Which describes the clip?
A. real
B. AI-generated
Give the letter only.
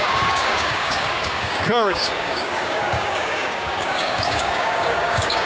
B